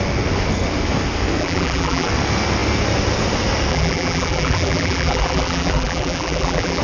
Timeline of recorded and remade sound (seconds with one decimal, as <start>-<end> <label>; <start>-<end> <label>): 0.0-1.4 recorded; 1.4-2.1 remade; 2.1-3.7 recorded; 3.7-6.8 remade